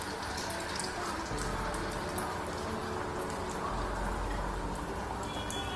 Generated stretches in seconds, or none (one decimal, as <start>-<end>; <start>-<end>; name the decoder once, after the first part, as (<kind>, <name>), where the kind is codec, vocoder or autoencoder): none